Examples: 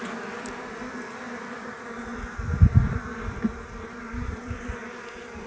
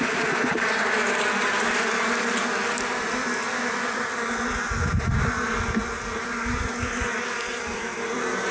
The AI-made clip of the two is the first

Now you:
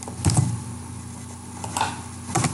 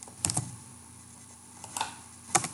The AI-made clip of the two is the second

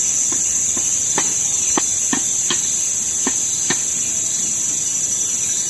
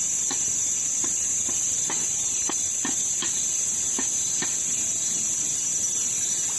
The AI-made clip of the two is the second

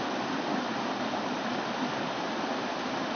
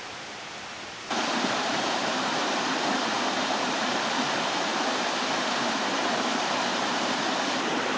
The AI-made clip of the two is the second